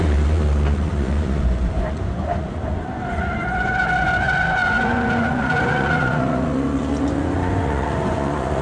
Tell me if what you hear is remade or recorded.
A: remade